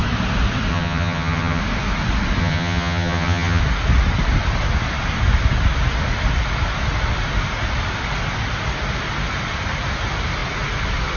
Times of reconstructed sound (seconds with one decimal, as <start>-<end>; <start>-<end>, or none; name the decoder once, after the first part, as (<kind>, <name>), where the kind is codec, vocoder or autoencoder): 0.7-1.6 (vocoder, HiFi-GAN); 2.4-3.6